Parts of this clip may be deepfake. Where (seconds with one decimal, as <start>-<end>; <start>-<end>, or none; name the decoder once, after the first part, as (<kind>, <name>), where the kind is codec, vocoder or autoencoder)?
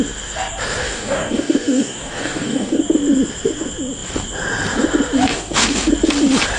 0.8-2.8 (codec, DAC); 5.3-5.9